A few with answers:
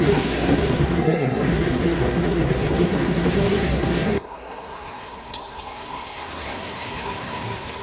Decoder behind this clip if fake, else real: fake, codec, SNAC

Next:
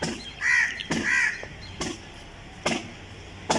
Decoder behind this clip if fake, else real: real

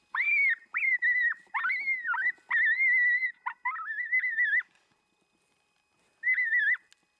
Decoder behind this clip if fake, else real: real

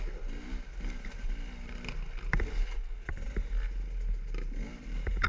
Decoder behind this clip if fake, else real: real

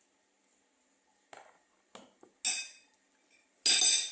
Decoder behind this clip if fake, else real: real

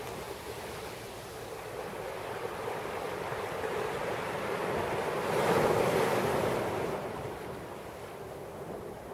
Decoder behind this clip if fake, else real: fake, vocoder, BigVGAN v2